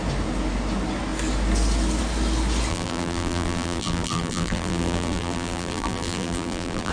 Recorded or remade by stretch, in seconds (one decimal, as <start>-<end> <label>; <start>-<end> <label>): 0.0-2.7 recorded; 2.7-6.9 remade